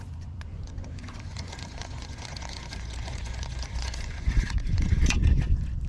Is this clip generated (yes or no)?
yes